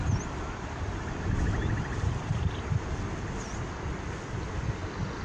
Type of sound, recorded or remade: recorded